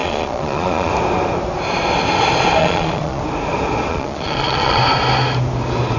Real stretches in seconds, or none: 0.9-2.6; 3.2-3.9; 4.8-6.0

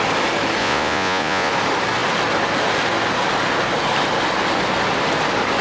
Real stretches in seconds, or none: 0.0-0.6; 1.5-5.6

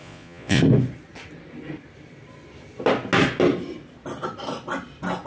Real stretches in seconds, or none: 0.6-5.3

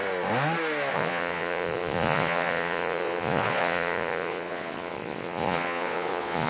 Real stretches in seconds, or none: 0.0-0.9

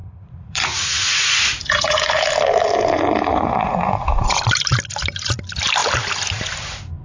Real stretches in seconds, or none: 2.1-3.3; 4.4-7.0

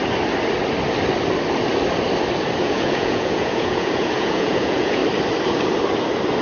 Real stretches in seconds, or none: 0.0-2.6; 5.0-6.4